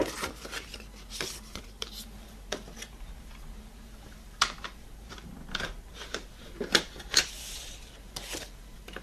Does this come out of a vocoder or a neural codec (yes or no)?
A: yes